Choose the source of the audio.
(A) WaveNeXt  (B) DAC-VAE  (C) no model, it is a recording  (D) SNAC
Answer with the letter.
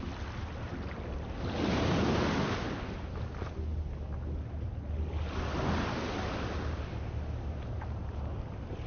C